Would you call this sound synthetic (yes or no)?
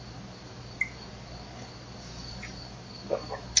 no